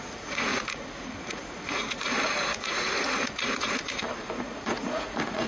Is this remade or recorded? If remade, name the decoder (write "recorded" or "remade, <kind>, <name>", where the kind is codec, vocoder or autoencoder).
remade, vocoder, Vocos